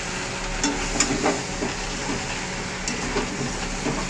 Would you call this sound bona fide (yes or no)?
yes